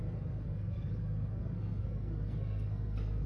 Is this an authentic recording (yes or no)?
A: no